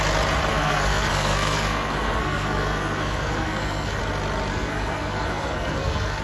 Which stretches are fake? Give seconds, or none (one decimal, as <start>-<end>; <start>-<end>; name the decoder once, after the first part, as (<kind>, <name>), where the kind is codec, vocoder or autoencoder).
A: 0.5-4.0 (codec, SNAC); 4.5-6.2